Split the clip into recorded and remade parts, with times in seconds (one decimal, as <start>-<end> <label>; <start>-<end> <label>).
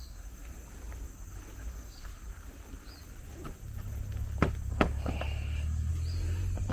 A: 0.0-0.4 remade; 0.4-1.7 recorded; 1.7-2.1 remade; 2.1-4.7 recorded; 4.7-5.9 remade; 5.9-6.7 recorded